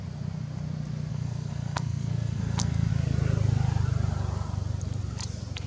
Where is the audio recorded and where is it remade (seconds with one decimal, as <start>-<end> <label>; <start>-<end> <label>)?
0.0-1.1 recorded; 1.1-2.9 remade; 2.9-5.7 recorded